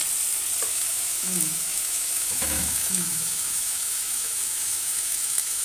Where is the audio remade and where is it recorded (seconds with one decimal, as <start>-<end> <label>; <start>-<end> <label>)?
0.0-0.7 recorded; 0.7-5.6 remade